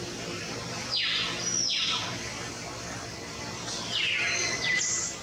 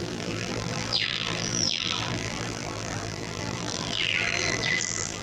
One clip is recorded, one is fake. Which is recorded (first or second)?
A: first